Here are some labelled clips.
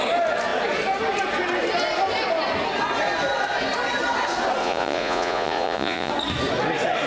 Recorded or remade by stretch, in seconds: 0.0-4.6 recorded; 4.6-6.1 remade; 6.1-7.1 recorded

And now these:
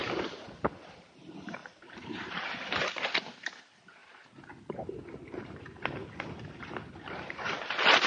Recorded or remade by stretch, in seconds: 0.0-1.6 recorded; 1.6-2.3 remade; 2.3-8.1 recorded

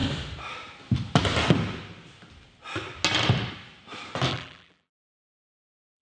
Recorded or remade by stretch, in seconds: 0.0-4.3 recorded; 4.3-6.0 remade

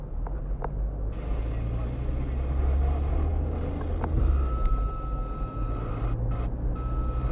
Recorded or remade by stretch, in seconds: 0.0-7.3 recorded

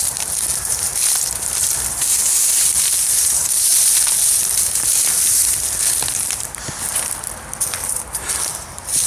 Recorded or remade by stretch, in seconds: 0.0-0.9 remade; 0.9-1.9 recorded; 1.9-3.7 remade; 3.7-8.5 recorded; 8.5-9.1 remade

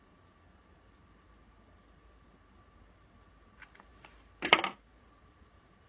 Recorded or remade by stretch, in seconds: 0.0-5.9 recorded

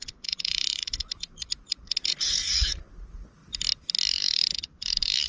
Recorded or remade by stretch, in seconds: 0.0-3.4 remade; 3.4-5.3 recorded